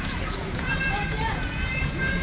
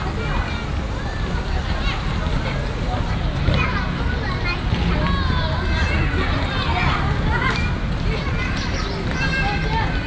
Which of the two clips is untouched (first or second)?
second